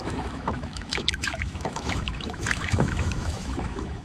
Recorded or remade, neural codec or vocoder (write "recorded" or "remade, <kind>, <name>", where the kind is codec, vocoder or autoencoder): remade, autoencoder, DAC-VAE